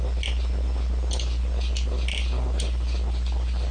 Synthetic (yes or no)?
no